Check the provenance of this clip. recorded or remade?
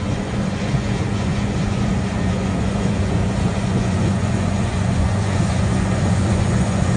remade